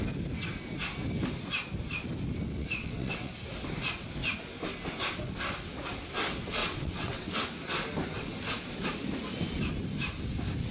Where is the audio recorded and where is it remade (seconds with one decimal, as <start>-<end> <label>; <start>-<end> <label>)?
0.0-2.6 recorded; 2.6-3.3 remade; 3.3-6.6 recorded; 6.6-7.5 remade; 7.5-10.7 recorded